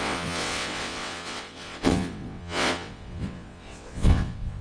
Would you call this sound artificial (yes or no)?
yes